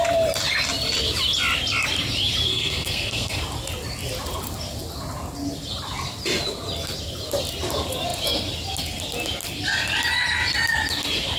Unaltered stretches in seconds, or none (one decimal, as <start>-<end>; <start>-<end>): 0.0-2.5; 3.4-11.4